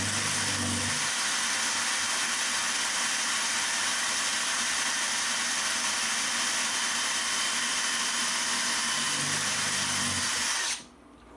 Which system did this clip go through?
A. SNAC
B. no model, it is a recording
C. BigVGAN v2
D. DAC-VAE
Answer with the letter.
B